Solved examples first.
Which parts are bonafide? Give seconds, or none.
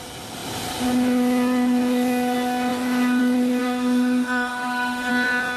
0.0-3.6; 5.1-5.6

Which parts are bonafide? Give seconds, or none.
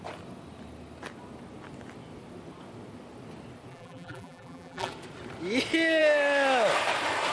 0.0-3.7; 4.9-7.3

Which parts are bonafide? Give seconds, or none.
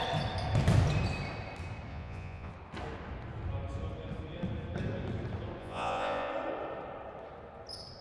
0.0-1.9; 2.5-5.6; 6.3-8.0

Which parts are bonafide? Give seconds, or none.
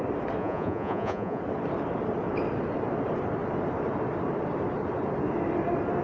0.0-0.4; 1.4-6.0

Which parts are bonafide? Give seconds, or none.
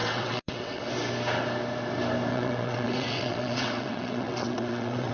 0.9-2.3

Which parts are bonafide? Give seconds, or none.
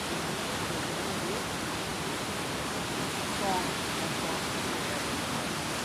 0.0-5.8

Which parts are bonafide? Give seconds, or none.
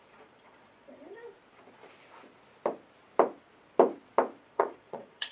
1.2-4.4